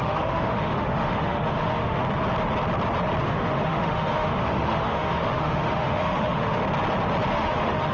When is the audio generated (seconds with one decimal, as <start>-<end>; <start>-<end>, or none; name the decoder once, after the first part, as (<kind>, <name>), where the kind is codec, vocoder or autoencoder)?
0.0-2.0 (autoencoder, DAC-VAE); 3.2-6.6; 7.3-7.9